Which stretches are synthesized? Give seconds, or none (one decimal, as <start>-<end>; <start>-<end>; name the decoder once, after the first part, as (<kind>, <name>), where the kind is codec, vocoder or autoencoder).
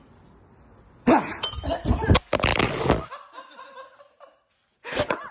none